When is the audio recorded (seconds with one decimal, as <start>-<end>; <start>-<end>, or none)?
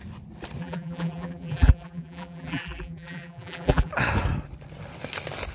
0.0-0.6; 3.9-5.5